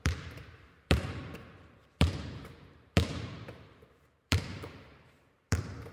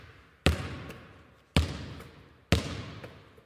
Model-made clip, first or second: first